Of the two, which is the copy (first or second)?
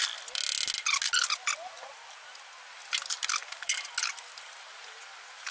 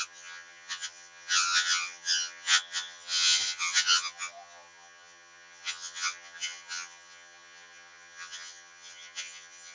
second